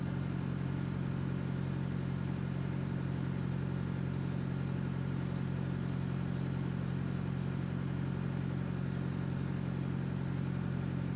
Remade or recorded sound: recorded